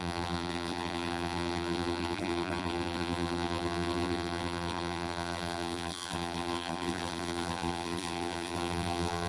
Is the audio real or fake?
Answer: fake